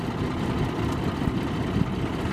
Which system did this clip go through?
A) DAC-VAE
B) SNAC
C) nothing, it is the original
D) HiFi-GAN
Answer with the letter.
C